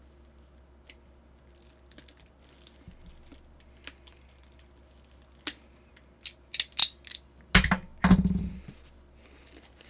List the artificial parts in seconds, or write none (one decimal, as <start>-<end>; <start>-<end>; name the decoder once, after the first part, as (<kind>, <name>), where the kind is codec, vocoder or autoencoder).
none